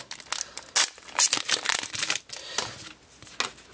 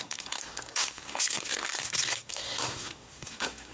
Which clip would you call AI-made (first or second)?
second